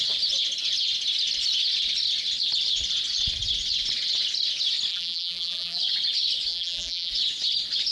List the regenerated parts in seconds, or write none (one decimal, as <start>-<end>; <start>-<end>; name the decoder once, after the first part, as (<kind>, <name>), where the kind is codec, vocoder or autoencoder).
4.9-5.8 (vocoder, BigVGAN v2); 6.5-7.1